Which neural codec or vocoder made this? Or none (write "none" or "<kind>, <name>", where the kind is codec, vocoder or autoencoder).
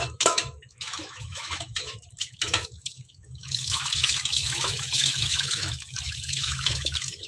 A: autoencoder, DAC-VAE